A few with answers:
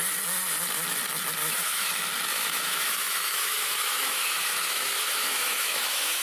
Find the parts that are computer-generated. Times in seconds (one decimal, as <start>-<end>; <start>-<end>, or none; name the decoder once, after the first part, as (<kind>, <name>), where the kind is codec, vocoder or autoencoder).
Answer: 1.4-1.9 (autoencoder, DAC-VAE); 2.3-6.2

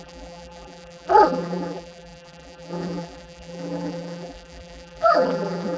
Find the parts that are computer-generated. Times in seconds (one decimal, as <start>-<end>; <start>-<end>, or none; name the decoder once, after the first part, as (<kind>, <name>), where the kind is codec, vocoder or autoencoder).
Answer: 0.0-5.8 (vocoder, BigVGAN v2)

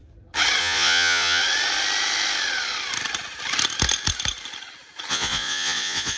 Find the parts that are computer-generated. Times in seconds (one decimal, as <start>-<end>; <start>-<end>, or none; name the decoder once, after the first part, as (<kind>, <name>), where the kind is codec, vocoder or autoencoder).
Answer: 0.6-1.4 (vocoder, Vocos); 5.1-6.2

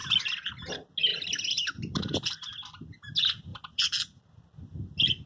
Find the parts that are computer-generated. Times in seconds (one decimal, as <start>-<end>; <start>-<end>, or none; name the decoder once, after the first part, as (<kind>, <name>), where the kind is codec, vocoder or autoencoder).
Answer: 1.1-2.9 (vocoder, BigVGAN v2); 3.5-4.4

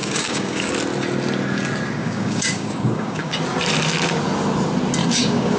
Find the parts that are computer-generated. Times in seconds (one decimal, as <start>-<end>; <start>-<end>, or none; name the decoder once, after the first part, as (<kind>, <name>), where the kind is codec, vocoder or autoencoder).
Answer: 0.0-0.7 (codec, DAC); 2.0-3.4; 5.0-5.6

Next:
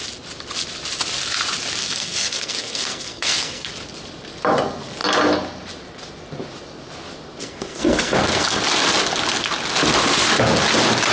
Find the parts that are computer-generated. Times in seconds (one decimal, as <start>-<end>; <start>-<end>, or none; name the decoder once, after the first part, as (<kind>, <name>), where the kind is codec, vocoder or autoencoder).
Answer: 1.8-3.7 (codec, SNAC); 7.4-8.6

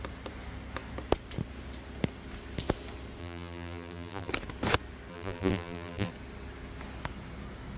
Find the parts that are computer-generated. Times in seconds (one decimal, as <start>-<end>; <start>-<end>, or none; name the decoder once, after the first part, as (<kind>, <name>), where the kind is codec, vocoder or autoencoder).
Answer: 3.2-4.3 (vocoder, BigVGAN v2); 5.1-6.1